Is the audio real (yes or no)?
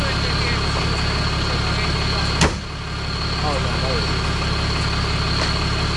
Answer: yes